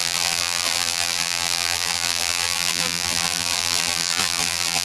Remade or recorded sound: remade